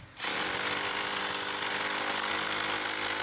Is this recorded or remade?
recorded